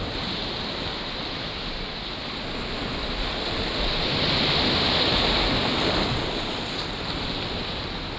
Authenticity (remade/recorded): recorded